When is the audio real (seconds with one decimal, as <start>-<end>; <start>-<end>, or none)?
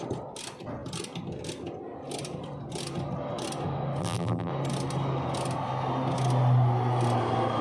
0.0-4.0; 4.5-7.6